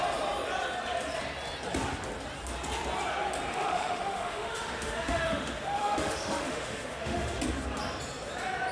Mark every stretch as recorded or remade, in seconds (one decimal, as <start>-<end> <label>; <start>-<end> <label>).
0.0-3.5 recorded; 3.5-7.4 remade; 7.4-8.7 recorded